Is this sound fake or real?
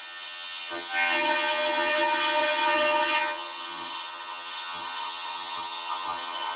fake